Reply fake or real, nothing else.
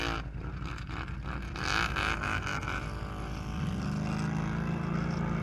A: real